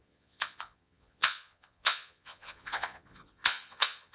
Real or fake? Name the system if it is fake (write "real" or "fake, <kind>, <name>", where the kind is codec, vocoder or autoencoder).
fake, vocoder, Vocos